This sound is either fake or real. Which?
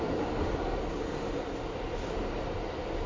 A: real